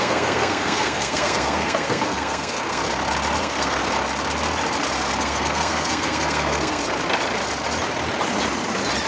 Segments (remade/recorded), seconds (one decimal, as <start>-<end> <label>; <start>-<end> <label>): 0.0-2.8 remade; 2.8-3.4 recorded; 3.4-3.8 remade; 3.8-5.2 recorded; 5.2-6.8 remade; 6.8-9.1 recorded